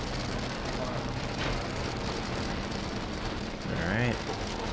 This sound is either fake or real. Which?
real